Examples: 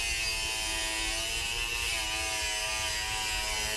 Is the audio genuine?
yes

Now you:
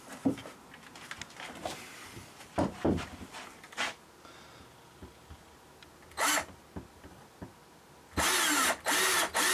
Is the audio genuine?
yes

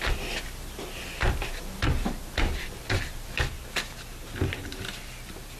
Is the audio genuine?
yes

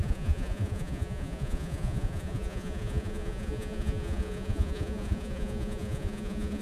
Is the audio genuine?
no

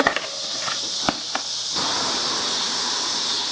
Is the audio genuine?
yes